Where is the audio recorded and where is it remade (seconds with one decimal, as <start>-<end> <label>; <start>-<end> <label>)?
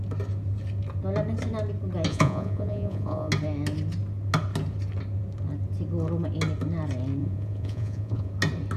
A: 0.0-2.1 recorded; 2.1-3.3 remade; 3.3-7.2 recorded; 7.2-8.3 remade; 8.3-8.8 recorded